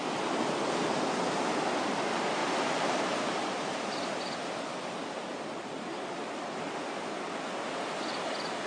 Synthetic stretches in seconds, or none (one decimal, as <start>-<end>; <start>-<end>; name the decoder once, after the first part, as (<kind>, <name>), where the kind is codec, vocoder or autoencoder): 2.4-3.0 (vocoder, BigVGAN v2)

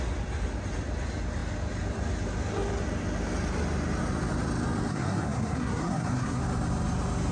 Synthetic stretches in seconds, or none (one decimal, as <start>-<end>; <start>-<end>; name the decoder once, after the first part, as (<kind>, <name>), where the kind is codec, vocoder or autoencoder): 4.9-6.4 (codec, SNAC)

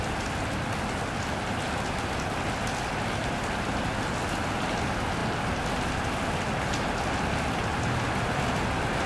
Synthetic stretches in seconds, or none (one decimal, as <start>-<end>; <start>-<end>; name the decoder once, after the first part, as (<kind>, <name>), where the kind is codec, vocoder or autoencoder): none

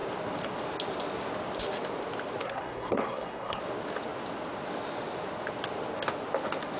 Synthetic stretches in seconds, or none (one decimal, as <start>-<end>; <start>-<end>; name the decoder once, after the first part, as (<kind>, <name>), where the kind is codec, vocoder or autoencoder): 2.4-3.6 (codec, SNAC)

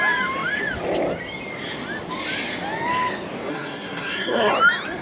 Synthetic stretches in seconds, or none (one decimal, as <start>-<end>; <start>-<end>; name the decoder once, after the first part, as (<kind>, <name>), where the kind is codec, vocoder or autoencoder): 3.5-4.5 (codec, SNAC)

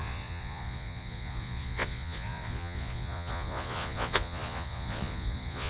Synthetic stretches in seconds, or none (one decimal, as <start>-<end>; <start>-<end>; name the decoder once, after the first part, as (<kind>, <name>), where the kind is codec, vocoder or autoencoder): 0.0-5.7 (vocoder, Vocos)